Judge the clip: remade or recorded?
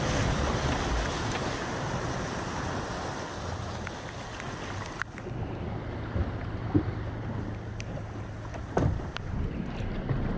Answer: recorded